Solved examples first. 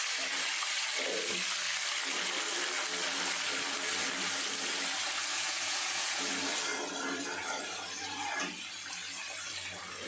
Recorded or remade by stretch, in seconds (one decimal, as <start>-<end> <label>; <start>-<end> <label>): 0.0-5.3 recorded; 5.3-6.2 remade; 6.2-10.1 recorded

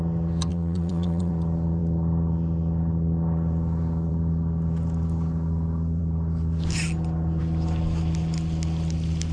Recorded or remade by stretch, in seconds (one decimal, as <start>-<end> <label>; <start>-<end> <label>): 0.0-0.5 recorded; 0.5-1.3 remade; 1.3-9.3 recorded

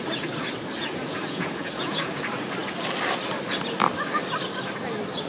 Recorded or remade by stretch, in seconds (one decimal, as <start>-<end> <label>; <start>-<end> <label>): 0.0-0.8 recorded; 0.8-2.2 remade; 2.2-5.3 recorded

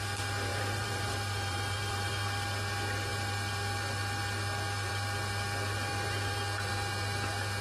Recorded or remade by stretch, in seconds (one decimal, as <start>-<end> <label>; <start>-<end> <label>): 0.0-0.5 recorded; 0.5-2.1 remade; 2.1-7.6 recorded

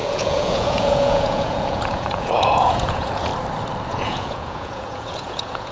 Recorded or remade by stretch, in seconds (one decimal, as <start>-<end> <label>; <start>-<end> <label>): 0.0-3.3 remade; 3.3-3.9 recorded; 3.9-5.7 remade